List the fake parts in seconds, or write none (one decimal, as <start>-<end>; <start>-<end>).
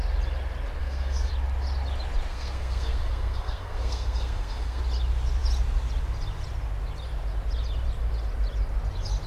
0.8-1.3; 2.3-4.8